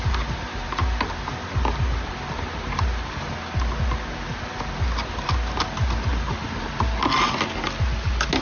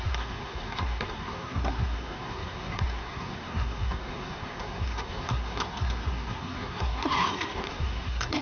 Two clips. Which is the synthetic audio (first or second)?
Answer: second